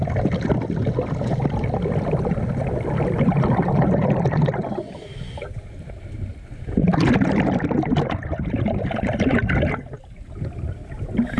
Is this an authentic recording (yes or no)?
no